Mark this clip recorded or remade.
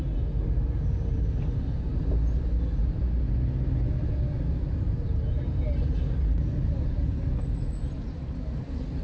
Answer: recorded